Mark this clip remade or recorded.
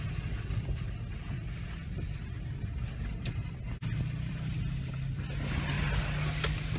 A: recorded